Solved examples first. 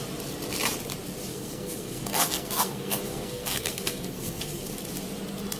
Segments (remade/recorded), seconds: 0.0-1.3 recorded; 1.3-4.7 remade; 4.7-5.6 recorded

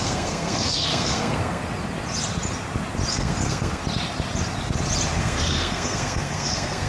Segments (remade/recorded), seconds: 0.0-1.6 remade; 1.6-3.1 recorded; 3.1-3.8 remade; 3.8-5.2 recorded; 5.2-6.9 remade

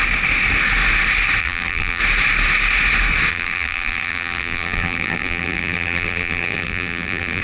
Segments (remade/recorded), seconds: 0.0-1.4 recorded; 1.4-2.0 remade; 2.0-3.3 recorded; 3.3-7.4 remade